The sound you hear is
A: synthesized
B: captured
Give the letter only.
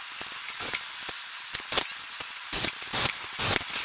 B